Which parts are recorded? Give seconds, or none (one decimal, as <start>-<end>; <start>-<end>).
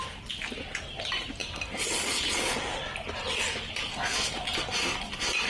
0.0-5.5